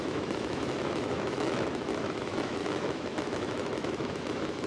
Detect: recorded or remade remade